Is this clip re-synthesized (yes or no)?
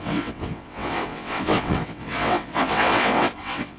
yes